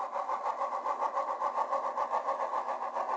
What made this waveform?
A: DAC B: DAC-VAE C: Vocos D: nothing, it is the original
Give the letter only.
D